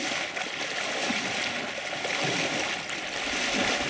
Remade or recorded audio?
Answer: recorded